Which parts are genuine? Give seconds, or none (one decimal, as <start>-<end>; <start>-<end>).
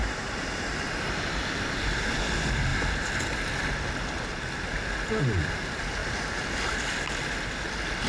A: 1.7-8.1